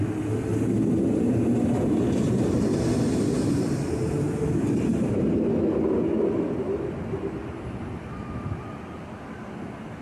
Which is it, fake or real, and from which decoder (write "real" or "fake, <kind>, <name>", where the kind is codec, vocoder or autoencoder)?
real